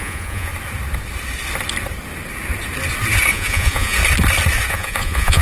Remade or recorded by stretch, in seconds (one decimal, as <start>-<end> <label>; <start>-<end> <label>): 0.0-0.5 remade; 0.5-3.3 recorded; 3.3-4.0 remade; 4.0-4.7 recorded; 4.7-5.4 remade